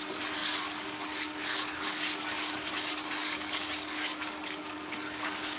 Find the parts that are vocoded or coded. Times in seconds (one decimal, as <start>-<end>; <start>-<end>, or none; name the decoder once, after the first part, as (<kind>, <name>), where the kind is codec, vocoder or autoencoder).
0.4-2.7 (codec, DAC); 3.2-5.6